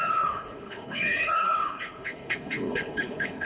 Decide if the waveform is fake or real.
fake